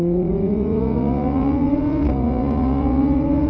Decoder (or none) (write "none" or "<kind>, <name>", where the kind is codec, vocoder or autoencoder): vocoder, Vocos